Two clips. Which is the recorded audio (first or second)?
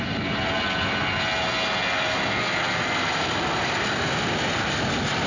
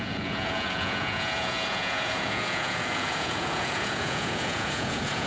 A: first